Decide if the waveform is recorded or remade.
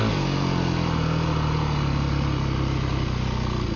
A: recorded